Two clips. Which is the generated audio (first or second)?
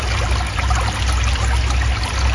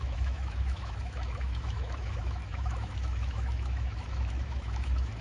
second